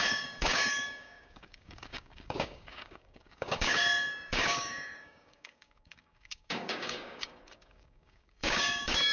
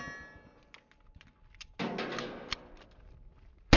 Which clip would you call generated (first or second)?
first